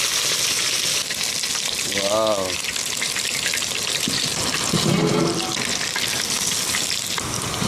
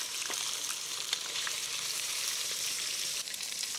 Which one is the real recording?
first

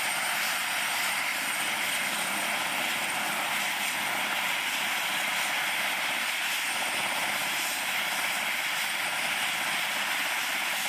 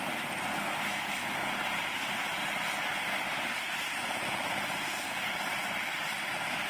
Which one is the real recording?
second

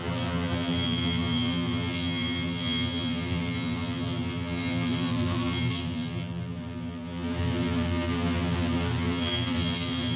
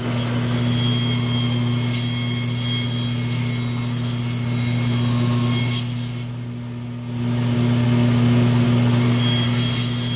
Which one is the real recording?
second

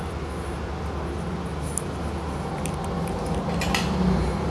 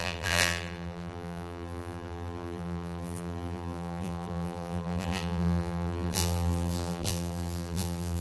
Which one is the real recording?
first